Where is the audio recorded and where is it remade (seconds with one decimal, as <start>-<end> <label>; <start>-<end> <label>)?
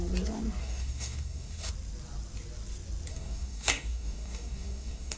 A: 0.0-0.6 recorded; 0.6-1.7 remade; 1.7-3.1 recorded; 3.1-5.2 remade